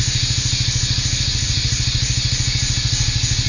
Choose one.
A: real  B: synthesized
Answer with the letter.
A